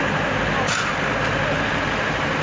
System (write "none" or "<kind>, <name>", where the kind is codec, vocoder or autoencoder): none